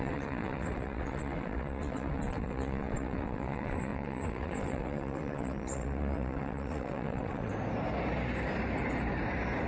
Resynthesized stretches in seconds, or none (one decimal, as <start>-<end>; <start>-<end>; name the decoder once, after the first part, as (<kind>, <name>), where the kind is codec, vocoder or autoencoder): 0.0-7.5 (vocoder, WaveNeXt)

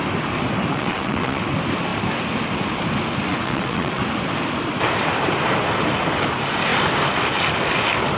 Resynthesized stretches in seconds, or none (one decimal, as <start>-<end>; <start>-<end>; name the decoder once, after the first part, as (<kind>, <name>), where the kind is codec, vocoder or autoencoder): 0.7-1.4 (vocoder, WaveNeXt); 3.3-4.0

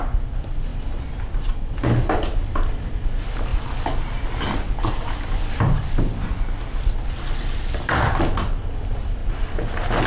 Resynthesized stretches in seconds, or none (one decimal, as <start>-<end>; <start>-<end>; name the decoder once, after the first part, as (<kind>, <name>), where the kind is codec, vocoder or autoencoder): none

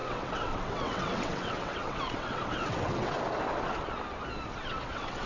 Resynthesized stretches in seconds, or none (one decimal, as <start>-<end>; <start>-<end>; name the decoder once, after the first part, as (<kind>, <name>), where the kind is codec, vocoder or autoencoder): 0.0-3.2 (vocoder, WaveNeXt); 4.6-5.3

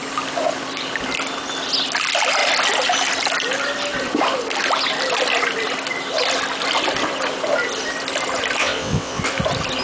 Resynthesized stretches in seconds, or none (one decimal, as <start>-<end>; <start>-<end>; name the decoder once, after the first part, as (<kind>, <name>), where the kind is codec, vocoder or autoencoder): 8.6-9.2 (vocoder, WaveNeXt)

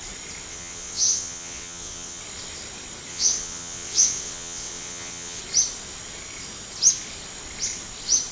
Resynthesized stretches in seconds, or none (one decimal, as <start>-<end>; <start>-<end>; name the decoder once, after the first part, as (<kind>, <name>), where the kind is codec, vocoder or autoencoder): 0.5-2.2 (vocoder, WaveNeXt); 3.1-5.4

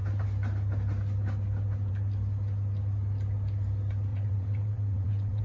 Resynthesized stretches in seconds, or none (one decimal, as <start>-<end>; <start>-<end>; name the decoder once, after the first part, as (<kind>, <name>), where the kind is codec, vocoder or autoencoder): 4.1-5.4 (vocoder, WaveNeXt)